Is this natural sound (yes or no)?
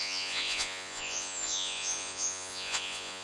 no